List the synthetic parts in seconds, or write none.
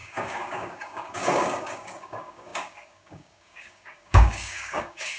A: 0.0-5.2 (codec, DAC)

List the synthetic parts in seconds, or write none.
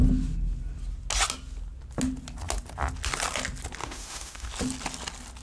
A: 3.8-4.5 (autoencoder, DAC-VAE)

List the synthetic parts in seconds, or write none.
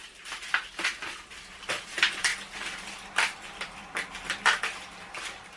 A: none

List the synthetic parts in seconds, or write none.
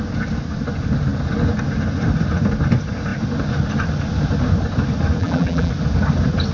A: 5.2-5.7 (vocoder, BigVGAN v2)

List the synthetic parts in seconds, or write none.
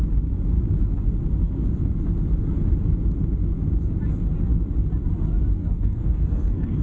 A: 5.6-6.8 (codec, SNAC)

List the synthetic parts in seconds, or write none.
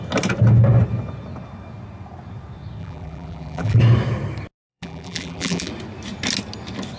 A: 2.8-3.8 (vocoder, BigVGAN v2); 4.7-5.7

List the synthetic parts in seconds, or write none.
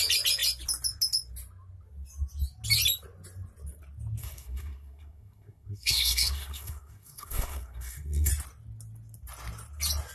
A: 4.2-8.3 (codec, SNAC)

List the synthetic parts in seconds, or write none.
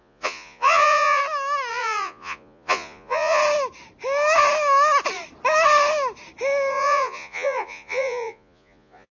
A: 0.0-1.2 (vocoder, Vocos); 1.7-3.4; 6.7-9.1